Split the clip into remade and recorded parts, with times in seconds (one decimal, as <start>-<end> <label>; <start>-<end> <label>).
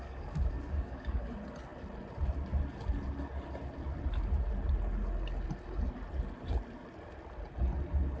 0.0-1.2 remade; 1.2-8.2 recorded